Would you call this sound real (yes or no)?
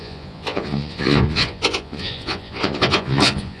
no